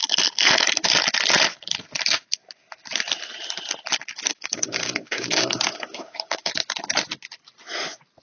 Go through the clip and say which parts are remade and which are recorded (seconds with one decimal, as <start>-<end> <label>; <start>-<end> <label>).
0.0-4.3 recorded; 4.3-6.5 remade; 6.5-8.2 recorded